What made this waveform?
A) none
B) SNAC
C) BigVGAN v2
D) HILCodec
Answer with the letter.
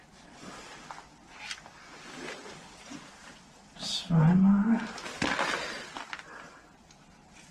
A